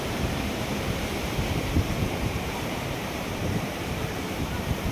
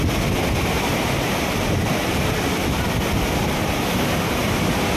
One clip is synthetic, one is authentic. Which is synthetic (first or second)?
first